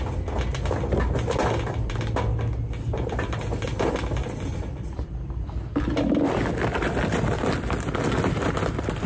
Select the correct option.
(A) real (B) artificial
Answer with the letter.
A